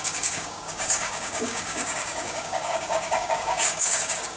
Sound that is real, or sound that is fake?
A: fake